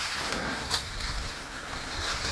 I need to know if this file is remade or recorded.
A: remade